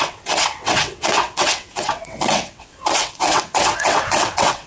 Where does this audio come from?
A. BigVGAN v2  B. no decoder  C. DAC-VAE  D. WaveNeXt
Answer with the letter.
D